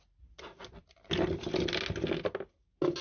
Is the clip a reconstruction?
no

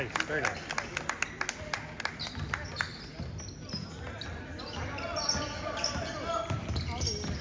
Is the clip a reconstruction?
no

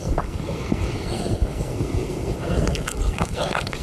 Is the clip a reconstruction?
yes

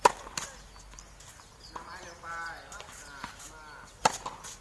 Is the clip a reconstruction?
no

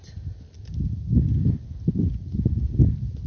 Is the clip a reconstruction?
no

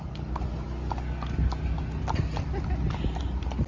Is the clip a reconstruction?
no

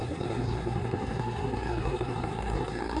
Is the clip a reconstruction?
yes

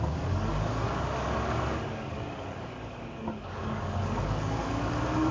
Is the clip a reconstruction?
yes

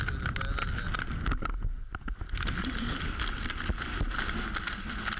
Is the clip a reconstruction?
no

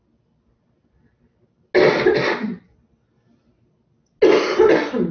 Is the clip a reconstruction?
no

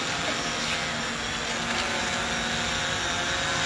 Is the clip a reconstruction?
no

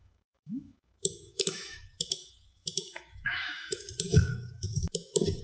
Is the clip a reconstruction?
yes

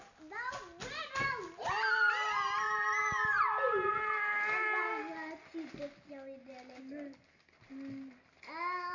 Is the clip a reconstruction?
no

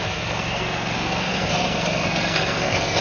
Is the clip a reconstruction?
yes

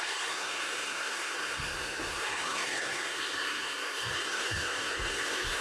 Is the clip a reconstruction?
yes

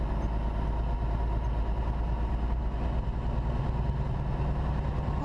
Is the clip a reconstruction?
no